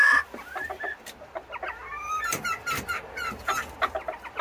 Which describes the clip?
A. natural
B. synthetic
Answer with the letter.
A